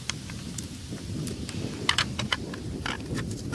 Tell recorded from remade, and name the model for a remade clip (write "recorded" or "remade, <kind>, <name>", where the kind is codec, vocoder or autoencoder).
remade, vocoder, BigVGAN v2